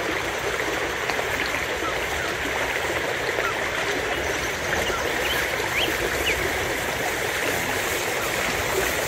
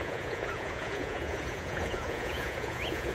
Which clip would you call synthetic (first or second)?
second